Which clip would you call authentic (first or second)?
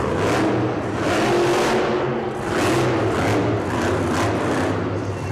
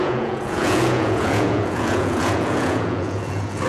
first